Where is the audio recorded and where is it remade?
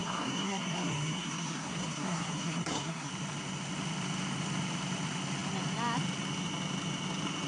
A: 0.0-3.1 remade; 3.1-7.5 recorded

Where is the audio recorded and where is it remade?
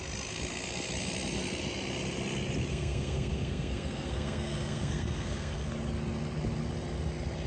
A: 0.0-2.7 recorded; 2.7-5.7 remade; 5.7-7.5 recorded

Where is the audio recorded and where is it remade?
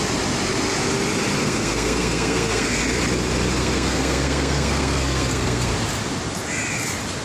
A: 0.0-1.4 recorded; 1.4-2.8 remade; 2.8-3.6 recorded; 3.6-5.7 remade; 5.7-7.2 recorded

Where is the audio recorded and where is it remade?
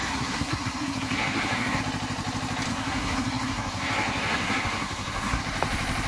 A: 0.0-1.8 remade; 1.8-2.7 recorded; 2.7-5.4 remade; 5.4-6.1 recorded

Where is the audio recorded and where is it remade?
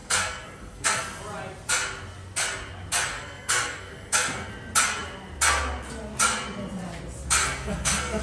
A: 0.0-1.2 remade; 1.2-3.1 recorded; 3.1-4.5 remade; 4.5-7.4 recorded; 7.4-8.2 remade